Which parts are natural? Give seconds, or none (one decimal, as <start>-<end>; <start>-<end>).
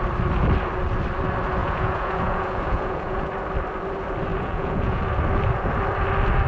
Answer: 0.0-1.6; 3.3-4.3; 5.0-6.5